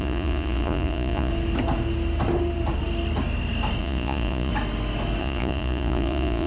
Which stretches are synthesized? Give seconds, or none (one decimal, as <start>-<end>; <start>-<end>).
0.0-1.3; 3.8-4.5; 5.2-6.5